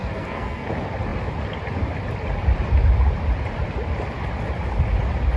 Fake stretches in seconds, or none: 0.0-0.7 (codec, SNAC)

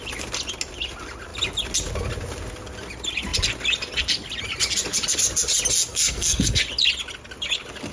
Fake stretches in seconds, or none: 5.9-6.6 (codec, SNAC)

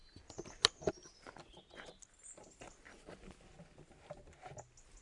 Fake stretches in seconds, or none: none

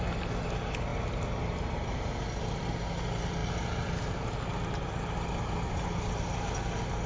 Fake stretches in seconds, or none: none

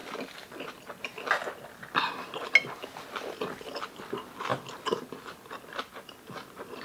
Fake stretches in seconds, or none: none

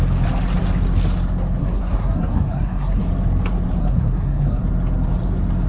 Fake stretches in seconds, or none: 1.6-3.0 (codec, SNAC); 3.8-4.6

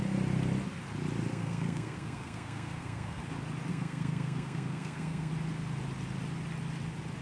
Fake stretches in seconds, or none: 1.3-3.2 (codec, SNAC); 3.7-5.3

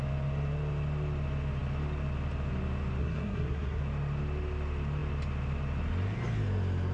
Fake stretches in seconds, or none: 3.0-3.8 (codec, SNAC)